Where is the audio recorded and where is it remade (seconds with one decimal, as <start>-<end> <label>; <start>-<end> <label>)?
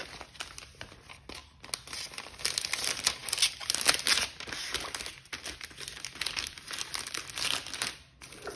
0.0-8.6 recorded